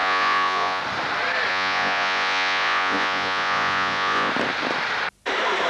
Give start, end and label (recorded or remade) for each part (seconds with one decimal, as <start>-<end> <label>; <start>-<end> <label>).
0.0-0.8 remade; 0.8-1.5 recorded; 1.5-4.3 remade; 4.3-5.7 recorded